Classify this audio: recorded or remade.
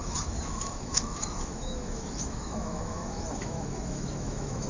remade